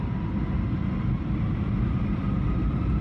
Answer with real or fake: real